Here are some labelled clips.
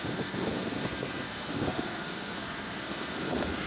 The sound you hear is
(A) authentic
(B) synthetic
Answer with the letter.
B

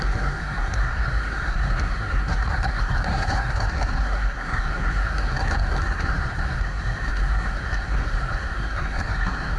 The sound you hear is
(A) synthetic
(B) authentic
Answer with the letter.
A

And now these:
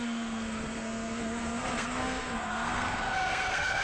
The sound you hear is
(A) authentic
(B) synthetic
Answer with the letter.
B